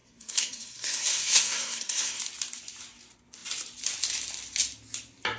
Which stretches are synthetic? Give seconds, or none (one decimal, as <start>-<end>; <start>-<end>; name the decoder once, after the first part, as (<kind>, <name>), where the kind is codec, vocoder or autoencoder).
0.0-2.2 (codec, SNAC)